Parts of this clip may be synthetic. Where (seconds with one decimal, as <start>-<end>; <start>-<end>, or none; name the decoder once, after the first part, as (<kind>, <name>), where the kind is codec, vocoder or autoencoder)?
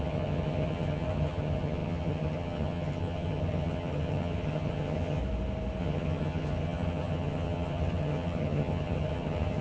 0.0-5.2 (vocoder, HiFi-GAN); 5.8-9.6